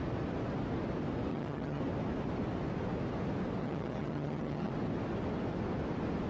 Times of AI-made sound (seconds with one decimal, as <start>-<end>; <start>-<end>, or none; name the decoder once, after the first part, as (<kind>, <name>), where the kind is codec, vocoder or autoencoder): 1.3-1.8 (vocoder, HiFi-GAN); 3.6-4.7